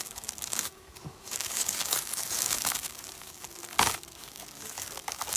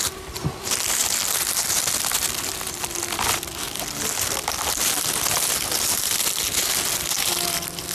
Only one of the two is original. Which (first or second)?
second